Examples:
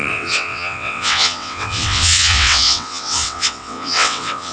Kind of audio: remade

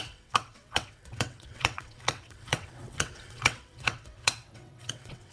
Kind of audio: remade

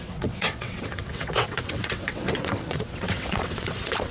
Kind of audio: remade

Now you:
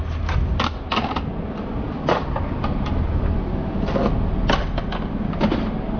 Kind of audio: recorded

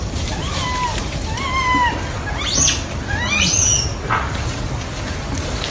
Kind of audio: recorded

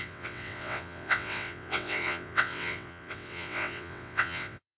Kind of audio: remade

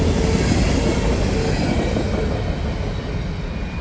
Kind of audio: recorded